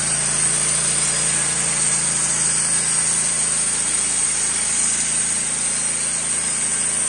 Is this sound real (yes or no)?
yes